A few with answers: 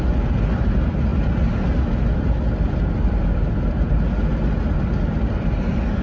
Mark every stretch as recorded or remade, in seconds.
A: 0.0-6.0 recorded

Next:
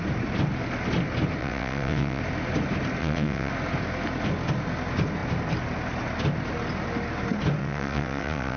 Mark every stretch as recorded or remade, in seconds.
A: 0.0-1.4 recorded; 1.4-2.2 remade; 2.2-3.0 recorded; 3.0-3.5 remade; 3.5-7.6 recorded; 7.6-8.6 remade

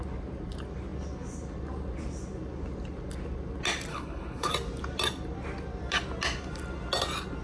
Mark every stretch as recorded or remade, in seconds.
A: 0.0-3.9 recorded; 3.9-4.5 remade; 4.5-7.4 recorded

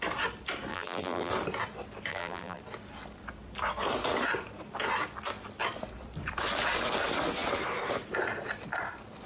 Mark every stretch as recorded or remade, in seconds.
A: 0.0-0.7 recorded; 0.7-1.3 remade; 1.3-2.1 recorded; 2.1-2.6 remade; 2.6-9.3 recorded